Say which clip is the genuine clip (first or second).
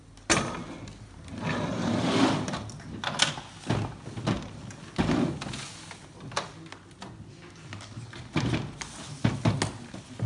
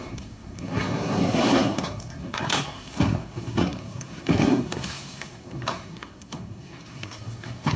first